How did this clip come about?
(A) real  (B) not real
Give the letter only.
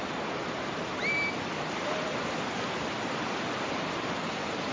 A